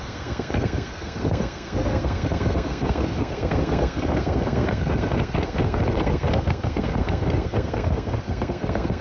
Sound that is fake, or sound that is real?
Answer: fake